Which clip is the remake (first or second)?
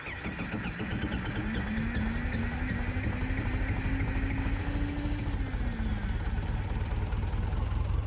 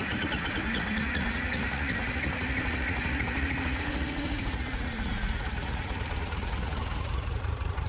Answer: second